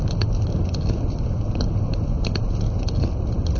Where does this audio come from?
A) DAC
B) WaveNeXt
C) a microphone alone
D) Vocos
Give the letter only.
C